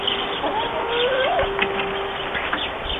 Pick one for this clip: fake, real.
real